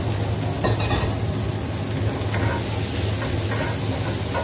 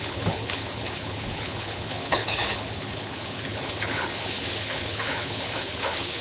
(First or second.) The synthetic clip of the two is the second